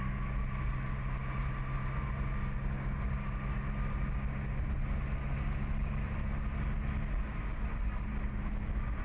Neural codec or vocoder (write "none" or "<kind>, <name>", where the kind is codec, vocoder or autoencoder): none